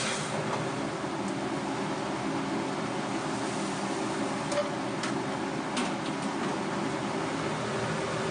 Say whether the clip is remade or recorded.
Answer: recorded